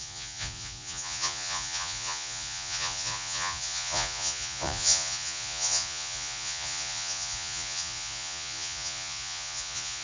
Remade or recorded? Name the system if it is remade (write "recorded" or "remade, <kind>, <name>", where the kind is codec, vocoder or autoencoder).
remade, vocoder, Vocos